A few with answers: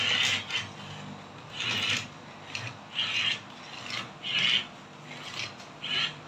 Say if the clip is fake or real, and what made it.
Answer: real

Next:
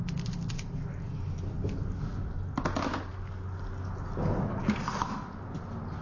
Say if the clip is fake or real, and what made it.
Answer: real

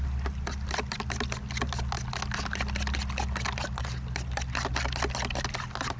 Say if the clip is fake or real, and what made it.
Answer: real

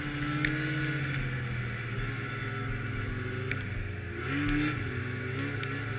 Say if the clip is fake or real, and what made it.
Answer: real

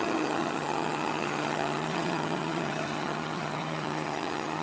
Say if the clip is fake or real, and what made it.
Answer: fake, vocoder, HiFi-GAN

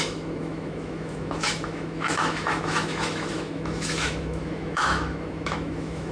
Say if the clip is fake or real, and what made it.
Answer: fake, autoencoder, DAC-VAE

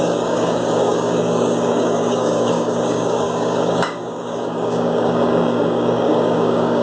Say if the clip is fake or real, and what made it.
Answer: fake, codec, DAC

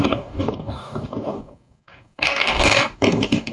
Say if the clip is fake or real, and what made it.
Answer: fake, codec, DAC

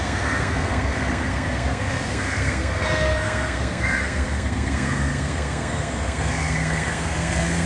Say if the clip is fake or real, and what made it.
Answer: fake, codec, SNAC